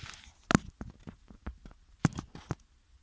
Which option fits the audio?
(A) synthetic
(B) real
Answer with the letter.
B